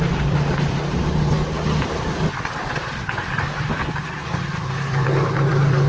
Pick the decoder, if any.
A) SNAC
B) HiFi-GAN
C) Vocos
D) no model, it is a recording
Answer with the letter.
D